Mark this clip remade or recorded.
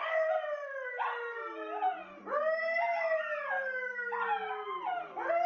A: recorded